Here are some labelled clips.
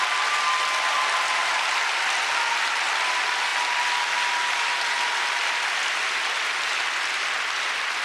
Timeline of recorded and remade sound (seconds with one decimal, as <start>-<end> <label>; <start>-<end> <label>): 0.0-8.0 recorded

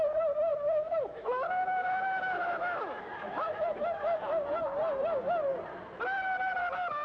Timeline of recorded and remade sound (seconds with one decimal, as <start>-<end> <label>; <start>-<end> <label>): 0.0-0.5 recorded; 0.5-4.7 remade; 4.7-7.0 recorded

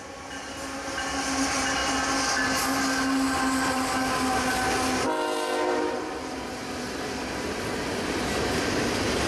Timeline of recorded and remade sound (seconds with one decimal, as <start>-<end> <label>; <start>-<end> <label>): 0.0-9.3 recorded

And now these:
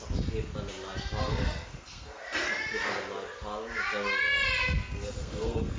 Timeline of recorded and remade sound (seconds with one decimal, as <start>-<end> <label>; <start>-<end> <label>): 0.0-1.2 recorded; 1.2-2.2 remade; 2.2-4.6 recorded; 4.6-5.8 remade

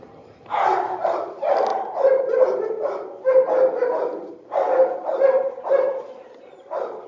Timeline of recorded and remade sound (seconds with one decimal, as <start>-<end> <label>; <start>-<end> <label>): 0.0-1.7 remade; 1.7-4.3 recorded; 4.3-7.1 remade

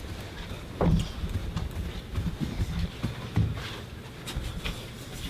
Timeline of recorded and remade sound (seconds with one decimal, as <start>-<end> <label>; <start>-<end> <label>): 0.0-5.3 recorded

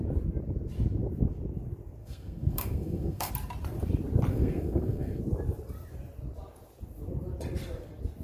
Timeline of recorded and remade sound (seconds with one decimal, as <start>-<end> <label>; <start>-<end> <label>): 0.0-2.0 recorded; 2.0-3.3 remade; 3.3-4.3 recorded; 4.3-5.2 remade; 5.2-8.2 recorded

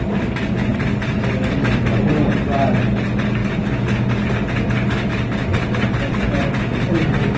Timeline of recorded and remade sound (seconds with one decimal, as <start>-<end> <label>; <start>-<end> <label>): 0.0-7.4 recorded